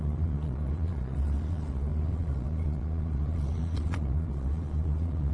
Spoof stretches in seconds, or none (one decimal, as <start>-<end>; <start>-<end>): 0.0-5.3